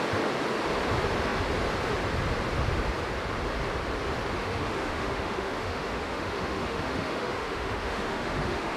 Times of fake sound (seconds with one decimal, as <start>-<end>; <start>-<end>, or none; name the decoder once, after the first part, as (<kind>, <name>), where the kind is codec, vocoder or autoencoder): 4.4-8.8 (autoencoder, DAC-VAE)